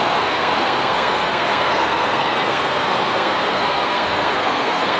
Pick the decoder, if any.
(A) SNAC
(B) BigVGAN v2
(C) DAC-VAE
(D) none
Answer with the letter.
A